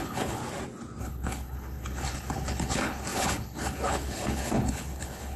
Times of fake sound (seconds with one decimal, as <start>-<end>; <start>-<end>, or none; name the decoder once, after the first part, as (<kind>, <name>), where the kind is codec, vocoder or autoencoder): 0.0-0.4 (codec, HILCodec); 1.0-5.4